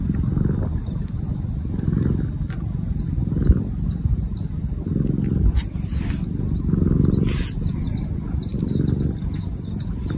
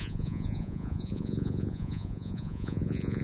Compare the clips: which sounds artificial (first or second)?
second